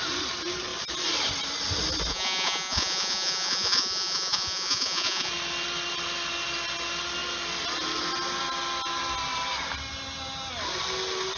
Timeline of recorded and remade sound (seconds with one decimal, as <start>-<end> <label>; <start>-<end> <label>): 0.0-2.1 recorded; 2.1-5.3 remade; 5.3-11.4 recorded